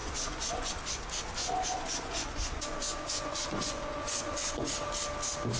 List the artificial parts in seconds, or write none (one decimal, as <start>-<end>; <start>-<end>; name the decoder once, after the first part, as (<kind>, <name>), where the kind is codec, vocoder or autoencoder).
0.0-0.7 (vocoder, Vocos); 1.4-4.7